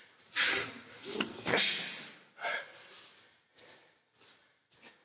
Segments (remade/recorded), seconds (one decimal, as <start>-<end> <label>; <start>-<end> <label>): 0.0-1.0 recorded; 1.0-1.8 remade; 1.8-5.0 recorded